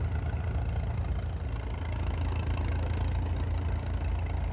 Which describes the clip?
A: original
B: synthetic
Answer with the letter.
A